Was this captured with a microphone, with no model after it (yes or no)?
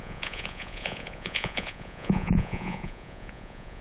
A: no